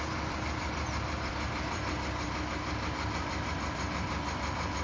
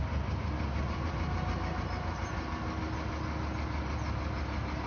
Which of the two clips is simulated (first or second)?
first